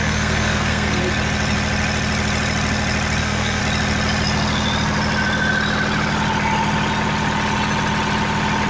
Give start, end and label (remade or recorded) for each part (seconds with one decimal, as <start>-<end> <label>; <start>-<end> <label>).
0.0-1.0 remade; 1.0-3.2 recorded; 3.2-3.6 remade; 3.6-8.7 recorded